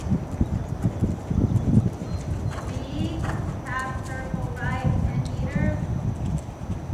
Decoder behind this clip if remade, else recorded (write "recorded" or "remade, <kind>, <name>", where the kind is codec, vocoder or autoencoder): recorded